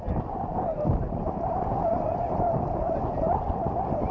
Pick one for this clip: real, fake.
real